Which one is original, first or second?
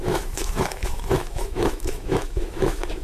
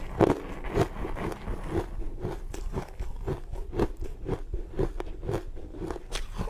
second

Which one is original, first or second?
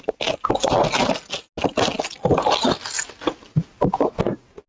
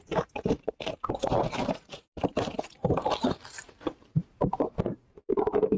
first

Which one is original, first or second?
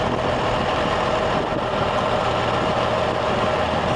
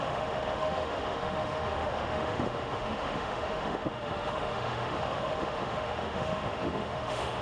first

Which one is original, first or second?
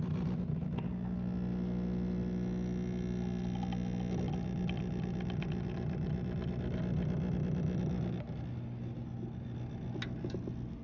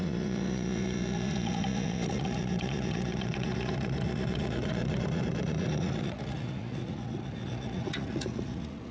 first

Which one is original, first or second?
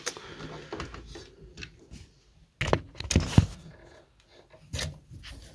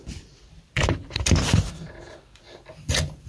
first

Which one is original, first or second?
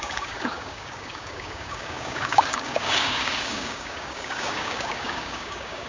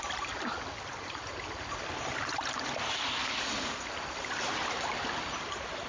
second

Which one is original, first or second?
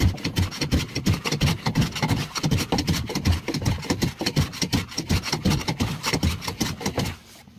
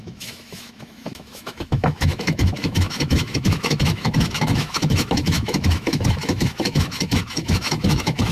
first